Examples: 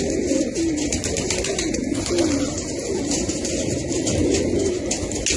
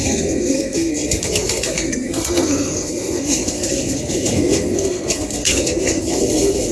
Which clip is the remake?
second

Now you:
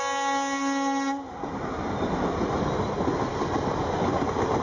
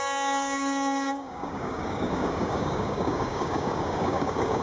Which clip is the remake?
second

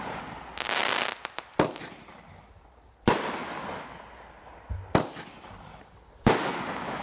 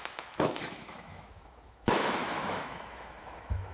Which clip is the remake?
second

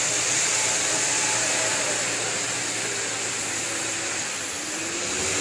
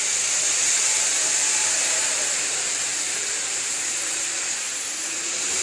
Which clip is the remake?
second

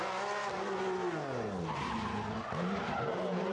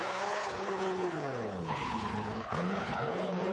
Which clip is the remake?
second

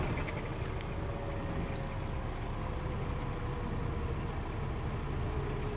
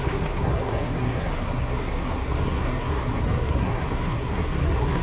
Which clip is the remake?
second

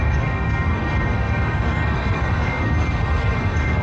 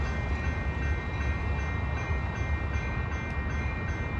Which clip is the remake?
first